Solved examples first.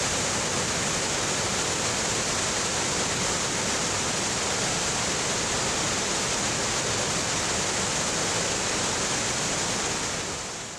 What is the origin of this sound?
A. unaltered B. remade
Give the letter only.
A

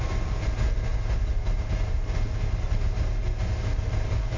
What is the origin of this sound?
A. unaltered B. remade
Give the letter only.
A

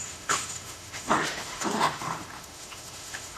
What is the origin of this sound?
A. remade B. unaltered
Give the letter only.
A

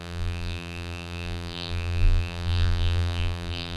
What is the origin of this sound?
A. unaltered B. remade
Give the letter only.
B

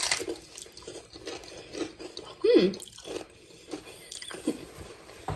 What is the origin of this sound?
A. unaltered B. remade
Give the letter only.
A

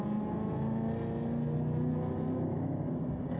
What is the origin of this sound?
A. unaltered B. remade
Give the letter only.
A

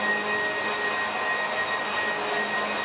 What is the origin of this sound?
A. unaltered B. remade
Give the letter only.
A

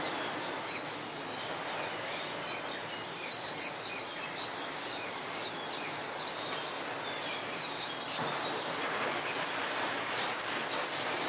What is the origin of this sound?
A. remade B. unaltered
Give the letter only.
B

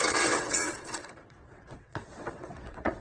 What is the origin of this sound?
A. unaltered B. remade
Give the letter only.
B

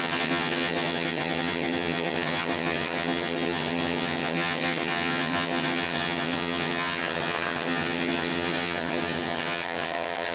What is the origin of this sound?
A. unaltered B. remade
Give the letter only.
B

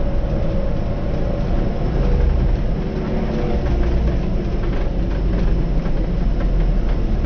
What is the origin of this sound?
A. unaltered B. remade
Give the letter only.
A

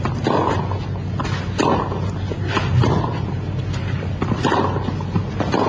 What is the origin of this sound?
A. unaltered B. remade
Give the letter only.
A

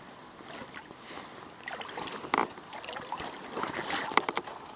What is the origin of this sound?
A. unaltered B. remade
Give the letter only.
A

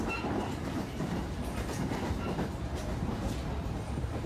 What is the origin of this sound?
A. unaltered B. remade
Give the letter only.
B